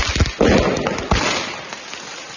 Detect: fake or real real